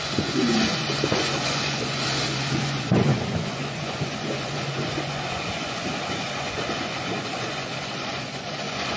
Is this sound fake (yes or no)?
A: yes